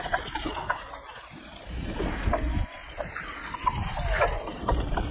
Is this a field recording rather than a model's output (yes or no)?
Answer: yes